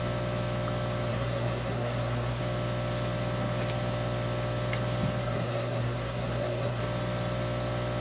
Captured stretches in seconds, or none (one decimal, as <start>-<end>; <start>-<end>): 0.0-1.1; 2.4-5.2; 6.8-8.0